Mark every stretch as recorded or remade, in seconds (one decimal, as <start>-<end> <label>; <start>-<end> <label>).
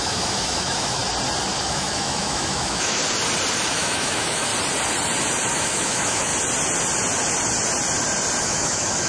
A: 0.0-1.0 remade; 1.0-1.6 recorded; 1.6-3.0 remade; 3.0-3.7 recorded; 3.7-4.5 remade; 4.5-5.5 recorded; 5.5-6.3 remade; 6.3-8.4 recorded; 8.4-9.1 remade